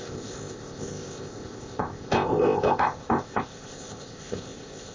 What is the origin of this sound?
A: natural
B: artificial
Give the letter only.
B